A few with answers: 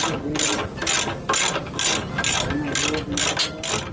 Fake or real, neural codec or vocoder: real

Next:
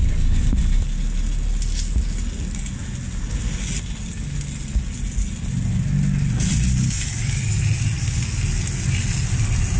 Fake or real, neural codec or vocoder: real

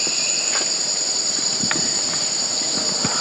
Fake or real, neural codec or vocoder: real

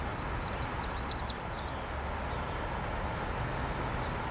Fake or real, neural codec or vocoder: real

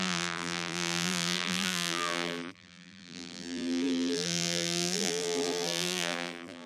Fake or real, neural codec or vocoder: fake, vocoder, BigVGAN v2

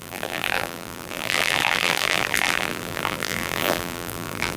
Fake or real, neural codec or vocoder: fake, vocoder, BigVGAN v2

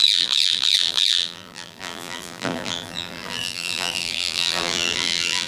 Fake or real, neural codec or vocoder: fake, vocoder, BigVGAN v2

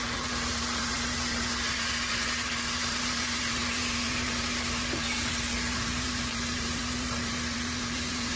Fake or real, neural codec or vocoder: fake, vocoder, BigVGAN v2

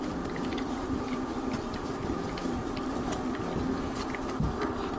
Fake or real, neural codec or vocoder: fake, vocoder, BigVGAN v2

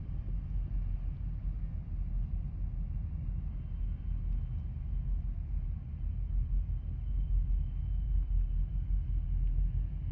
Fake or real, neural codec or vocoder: real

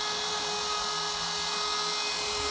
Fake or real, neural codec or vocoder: real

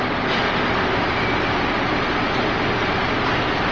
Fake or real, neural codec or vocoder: real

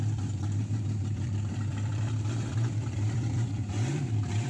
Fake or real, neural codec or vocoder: fake, vocoder, BigVGAN v2